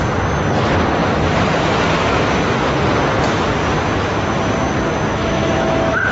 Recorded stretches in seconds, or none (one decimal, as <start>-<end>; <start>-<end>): 0.0-5.2

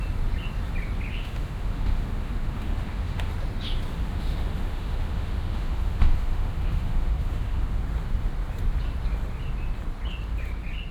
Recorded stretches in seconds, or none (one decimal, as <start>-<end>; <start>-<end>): 0.0-1.1; 3.3-3.9; 7.8-10.9

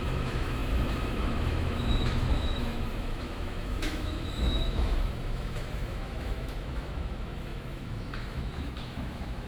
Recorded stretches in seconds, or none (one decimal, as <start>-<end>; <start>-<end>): none

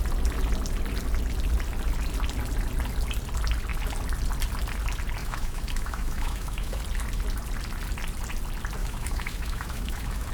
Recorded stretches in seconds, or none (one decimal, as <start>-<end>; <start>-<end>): 0.0-5.2; 6.8-8.8

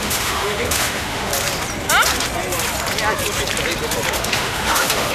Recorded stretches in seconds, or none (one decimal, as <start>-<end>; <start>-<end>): 1.3-4.1

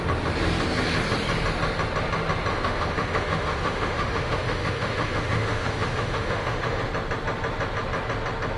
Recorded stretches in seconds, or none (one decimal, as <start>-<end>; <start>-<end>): 0.0-2.5; 6.8-8.6

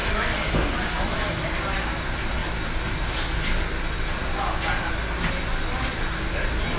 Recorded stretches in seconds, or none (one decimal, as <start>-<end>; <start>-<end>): 1.4-6.8